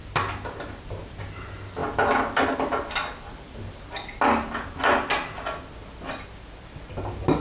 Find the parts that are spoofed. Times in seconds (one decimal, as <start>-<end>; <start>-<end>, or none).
none